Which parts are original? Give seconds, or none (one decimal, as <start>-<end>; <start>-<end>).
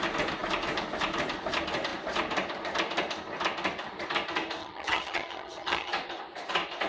0.0-4.6; 5.9-6.9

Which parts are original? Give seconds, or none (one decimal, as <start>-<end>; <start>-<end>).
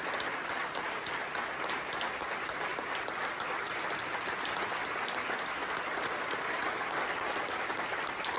0.0-8.4